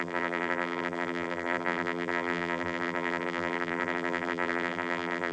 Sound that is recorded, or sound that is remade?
remade